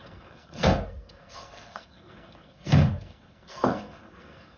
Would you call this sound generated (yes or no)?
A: yes